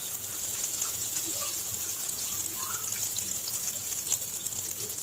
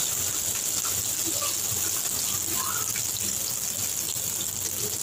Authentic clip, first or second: second